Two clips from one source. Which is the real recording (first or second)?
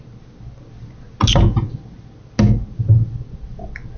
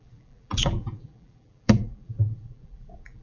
first